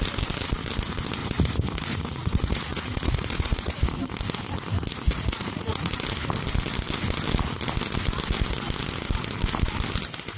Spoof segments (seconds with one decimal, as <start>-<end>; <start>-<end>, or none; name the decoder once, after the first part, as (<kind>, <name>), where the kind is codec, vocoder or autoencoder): 1.2-4.0 (vocoder, Vocos); 4.9-5.9